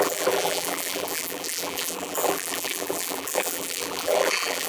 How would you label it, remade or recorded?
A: remade